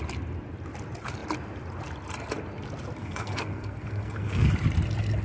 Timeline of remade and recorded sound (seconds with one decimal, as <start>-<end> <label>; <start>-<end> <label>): 0.0-3.0 recorded; 3.0-4.5 remade; 4.5-5.2 recorded